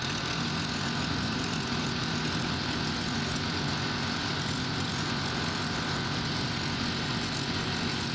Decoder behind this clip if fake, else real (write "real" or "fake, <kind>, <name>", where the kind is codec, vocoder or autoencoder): fake, vocoder, Vocos